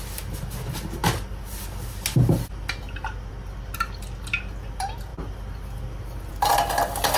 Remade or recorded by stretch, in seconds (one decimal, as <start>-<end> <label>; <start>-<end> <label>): 0.0-7.2 recorded